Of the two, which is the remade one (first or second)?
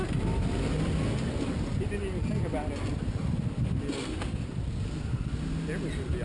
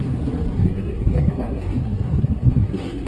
second